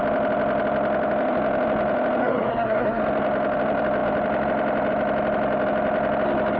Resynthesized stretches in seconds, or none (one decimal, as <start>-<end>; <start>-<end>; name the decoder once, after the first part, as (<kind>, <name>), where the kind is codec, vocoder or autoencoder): 2.2-3.0 (codec, SNAC)